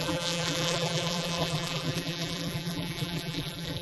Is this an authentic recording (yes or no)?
no